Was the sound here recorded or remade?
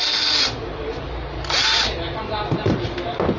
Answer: recorded